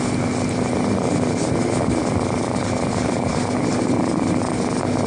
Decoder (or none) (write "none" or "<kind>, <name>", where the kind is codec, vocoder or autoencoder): none